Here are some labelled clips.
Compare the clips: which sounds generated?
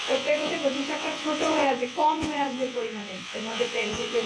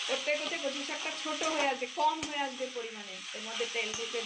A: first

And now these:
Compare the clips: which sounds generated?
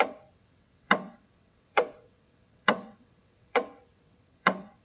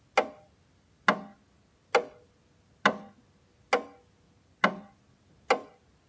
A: first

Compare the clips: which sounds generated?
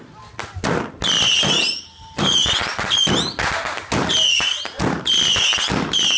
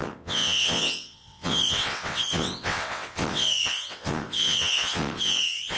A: second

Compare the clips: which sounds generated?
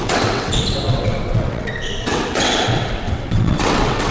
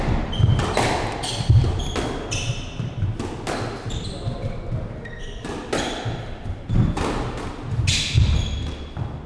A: first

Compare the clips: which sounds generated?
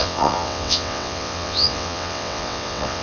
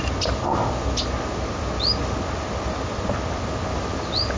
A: first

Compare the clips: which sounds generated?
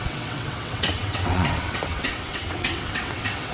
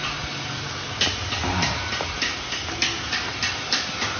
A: first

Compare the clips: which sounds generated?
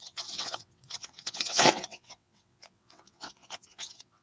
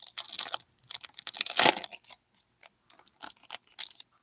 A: first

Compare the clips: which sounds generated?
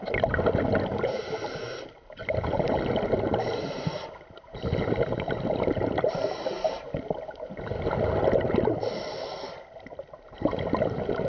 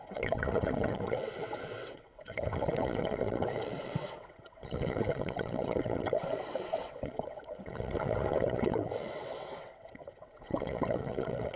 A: second